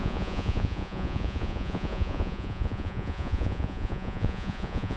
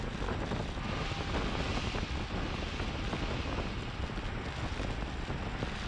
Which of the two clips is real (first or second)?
second